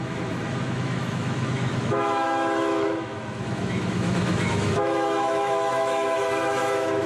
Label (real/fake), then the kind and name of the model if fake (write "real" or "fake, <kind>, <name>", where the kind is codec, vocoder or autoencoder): fake, autoencoder, DAC-VAE